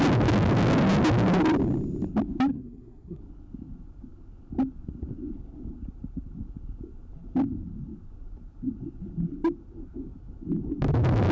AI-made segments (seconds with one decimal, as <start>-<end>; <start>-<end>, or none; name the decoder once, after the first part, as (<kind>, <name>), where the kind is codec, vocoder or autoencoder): 2.5-3.2 (codec, SNAC)